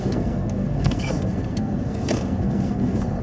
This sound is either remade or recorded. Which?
remade